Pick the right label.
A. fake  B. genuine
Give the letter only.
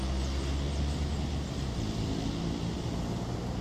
B